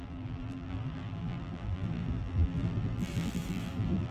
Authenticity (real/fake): fake